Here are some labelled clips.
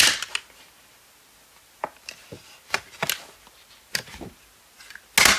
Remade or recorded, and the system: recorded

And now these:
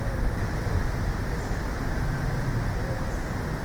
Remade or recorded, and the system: recorded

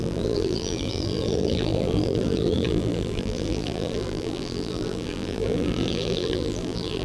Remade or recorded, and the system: remade, vocoder, BigVGAN v2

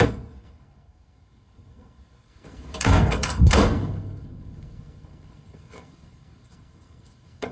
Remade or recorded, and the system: remade, codec, SNAC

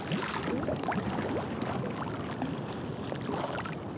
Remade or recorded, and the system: recorded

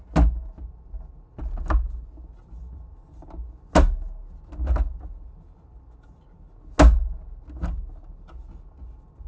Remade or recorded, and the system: recorded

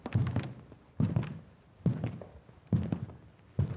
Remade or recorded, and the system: recorded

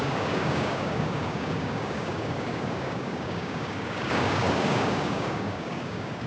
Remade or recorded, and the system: remade, codec, DAC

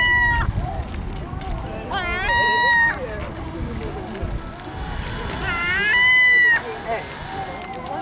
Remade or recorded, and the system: recorded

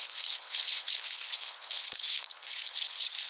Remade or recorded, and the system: remade, codec, HILCodec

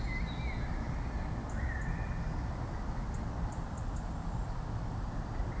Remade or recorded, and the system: recorded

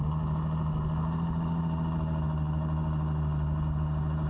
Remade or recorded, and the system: recorded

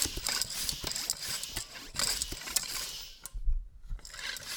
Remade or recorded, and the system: recorded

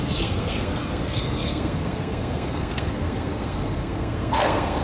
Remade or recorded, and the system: remade, codec, SNAC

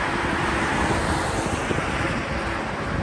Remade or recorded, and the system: recorded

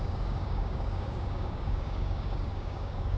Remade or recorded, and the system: remade, codec, DAC